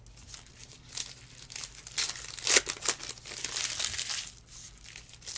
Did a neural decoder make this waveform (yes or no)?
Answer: no